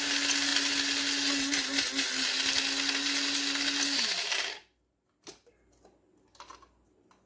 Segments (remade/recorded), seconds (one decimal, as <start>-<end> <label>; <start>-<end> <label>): 0.0-7.3 recorded